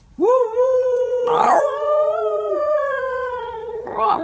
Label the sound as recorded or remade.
remade